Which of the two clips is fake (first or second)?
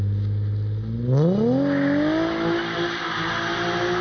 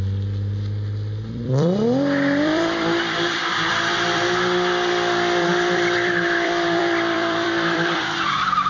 second